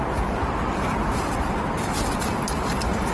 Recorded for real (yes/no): yes